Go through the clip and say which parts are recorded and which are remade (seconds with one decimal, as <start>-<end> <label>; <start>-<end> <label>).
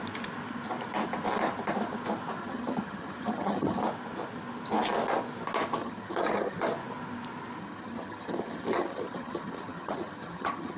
0.0-2.4 recorded; 2.4-3.8 remade; 3.8-5.8 recorded; 5.8-6.6 remade; 6.6-7.6 recorded; 7.6-10.8 remade